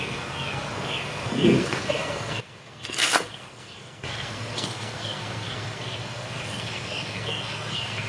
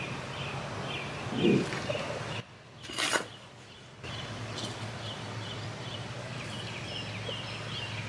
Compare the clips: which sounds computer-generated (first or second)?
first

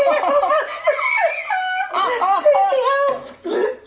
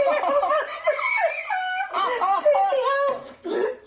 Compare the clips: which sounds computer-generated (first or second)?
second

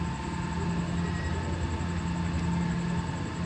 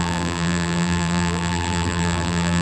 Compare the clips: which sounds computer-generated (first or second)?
second